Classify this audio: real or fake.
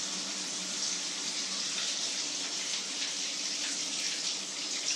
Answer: real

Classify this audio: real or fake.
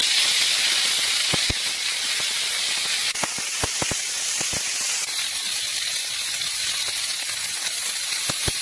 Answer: real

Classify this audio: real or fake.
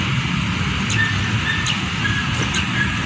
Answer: real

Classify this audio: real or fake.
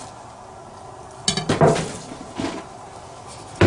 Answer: real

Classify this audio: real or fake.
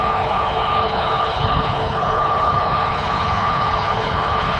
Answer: fake